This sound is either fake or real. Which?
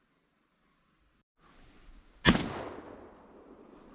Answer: real